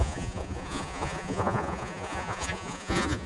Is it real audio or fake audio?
fake